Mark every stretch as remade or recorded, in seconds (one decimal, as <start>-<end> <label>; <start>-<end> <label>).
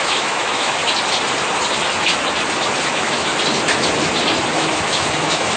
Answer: 0.0-0.8 remade; 0.8-2.9 recorded; 2.9-3.3 remade; 3.3-4.5 recorded; 4.5-5.6 remade